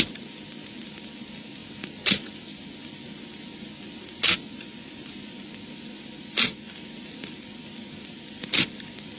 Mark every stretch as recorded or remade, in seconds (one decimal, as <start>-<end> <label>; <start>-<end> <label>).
0.0-9.2 recorded

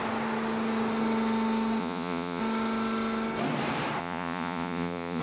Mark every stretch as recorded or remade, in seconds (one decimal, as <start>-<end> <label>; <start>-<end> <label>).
0.0-1.8 recorded; 1.8-2.4 remade; 2.4-4.0 recorded; 4.0-5.2 remade